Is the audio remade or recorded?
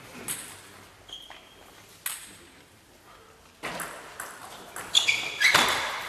recorded